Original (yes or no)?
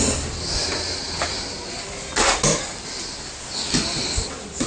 yes